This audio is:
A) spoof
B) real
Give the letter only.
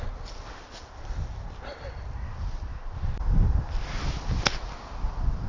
B